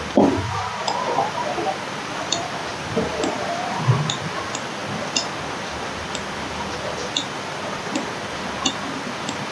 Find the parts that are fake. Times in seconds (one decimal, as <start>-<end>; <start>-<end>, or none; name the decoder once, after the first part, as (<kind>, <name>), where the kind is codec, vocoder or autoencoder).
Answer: 2.6-4.1 (vocoder, BigVGAN v2)